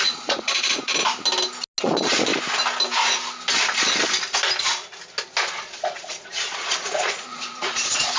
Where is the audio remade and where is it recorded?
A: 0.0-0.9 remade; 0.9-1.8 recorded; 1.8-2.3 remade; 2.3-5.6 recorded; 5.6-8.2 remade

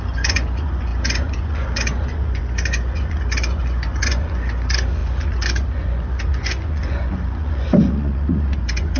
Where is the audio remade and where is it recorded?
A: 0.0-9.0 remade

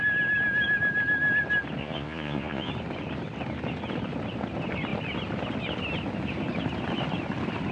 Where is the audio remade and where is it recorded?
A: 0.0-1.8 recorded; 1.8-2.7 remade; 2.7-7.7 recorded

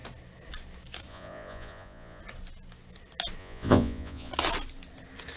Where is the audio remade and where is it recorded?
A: 0.0-1.1 recorded; 1.1-2.2 remade; 2.2-3.4 recorded; 3.4-4.3 remade; 4.3-5.4 recorded

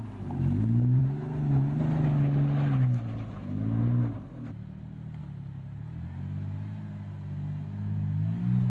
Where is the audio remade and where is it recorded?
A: 0.0-8.7 recorded